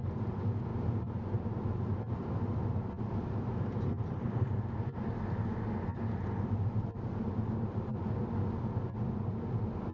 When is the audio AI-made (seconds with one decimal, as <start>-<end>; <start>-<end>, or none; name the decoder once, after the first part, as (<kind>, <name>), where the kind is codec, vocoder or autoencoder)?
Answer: 0.7-4.2 (vocoder, BigVGAN v2); 5.9-7.9